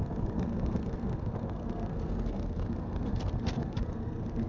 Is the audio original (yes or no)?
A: no